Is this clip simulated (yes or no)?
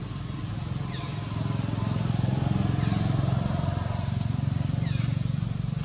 no